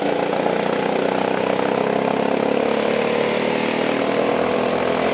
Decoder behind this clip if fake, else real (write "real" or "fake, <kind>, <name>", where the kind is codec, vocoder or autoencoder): real